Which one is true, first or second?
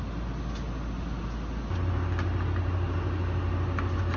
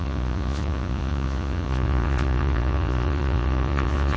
first